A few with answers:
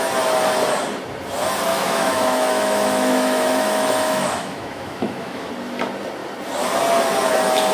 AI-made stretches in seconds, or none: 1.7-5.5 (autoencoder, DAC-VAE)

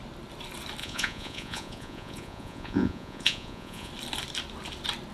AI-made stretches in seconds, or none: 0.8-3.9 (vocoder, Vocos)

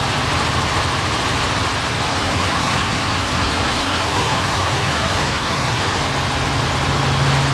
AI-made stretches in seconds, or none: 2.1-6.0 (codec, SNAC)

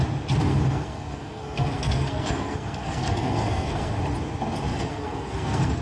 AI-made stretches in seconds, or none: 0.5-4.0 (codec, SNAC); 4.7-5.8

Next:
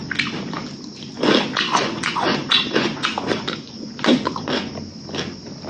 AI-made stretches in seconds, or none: 1.7-4.7 (vocoder, Vocos)

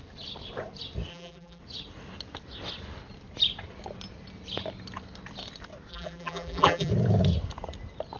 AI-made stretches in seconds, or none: 1.1-1.6 (vocoder, BigVGAN v2); 5.9-6.9

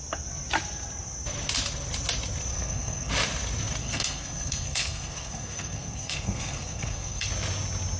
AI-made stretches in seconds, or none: 2.5-3.1 (codec, SNAC); 3.8-7.3